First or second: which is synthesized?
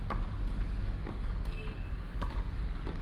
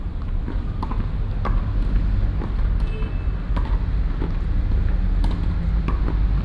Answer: first